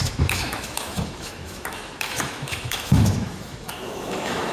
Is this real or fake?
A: fake